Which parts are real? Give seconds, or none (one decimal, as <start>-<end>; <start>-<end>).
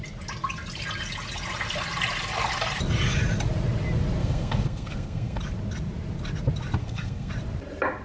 0.0-4.2; 5.4-6.8; 7.3-8.0